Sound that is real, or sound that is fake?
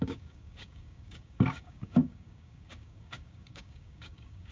fake